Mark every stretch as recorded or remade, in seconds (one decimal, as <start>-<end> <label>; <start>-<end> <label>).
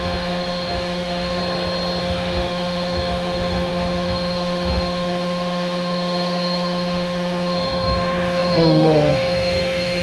0.0-1.4 remade; 1.4-2.0 recorded; 2.0-10.0 remade